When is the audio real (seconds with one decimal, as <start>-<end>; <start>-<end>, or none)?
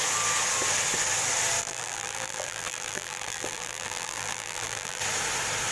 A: 0.0-1.6; 5.0-5.7